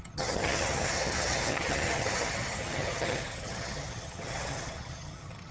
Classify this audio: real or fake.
fake